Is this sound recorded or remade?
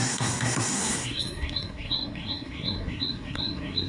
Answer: remade